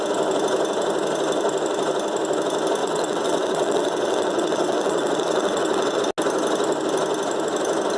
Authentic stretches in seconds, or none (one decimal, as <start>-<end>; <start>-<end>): 0.0-2.8; 6.0-8.0